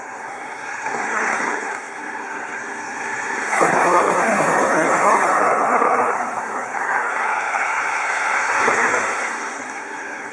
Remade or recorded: remade